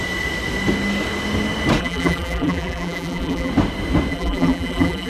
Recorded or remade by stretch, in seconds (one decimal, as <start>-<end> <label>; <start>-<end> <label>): 0.0-1.8 recorded; 1.8-3.5 remade; 3.5-4.1 recorded; 4.1-5.1 remade